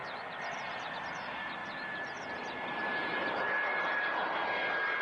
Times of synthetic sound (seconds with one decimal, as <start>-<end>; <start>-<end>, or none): 1.6-4.6